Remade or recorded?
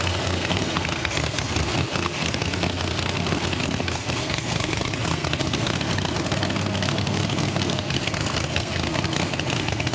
remade